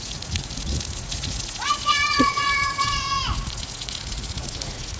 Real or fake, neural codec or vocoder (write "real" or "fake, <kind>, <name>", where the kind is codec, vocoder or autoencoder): fake, vocoder, Vocos